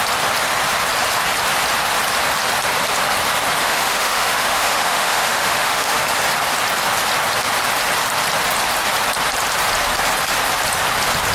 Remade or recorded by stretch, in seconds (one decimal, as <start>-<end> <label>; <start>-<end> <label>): 0.0-3.6 recorded; 3.6-6.0 remade; 6.0-11.3 recorded